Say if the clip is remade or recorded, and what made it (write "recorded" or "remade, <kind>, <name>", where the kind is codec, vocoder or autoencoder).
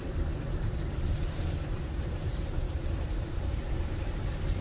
remade, vocoder, BigVGAN v2